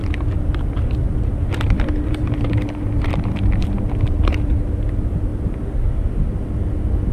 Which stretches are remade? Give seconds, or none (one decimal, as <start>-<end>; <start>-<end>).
0.0-5.3